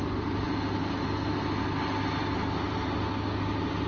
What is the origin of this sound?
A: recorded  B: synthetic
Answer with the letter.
A